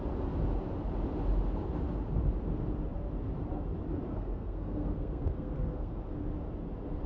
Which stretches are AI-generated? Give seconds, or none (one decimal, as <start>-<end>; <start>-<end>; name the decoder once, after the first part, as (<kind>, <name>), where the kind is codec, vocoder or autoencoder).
4.1-6.0 (codec, SNAC)